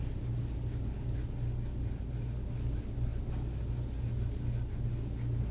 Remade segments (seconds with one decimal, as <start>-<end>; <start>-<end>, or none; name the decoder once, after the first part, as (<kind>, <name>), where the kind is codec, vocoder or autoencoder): none